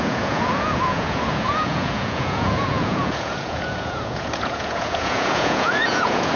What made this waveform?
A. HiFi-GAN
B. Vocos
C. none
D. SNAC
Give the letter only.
B